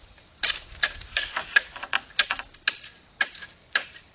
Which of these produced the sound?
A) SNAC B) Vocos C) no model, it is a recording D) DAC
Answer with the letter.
C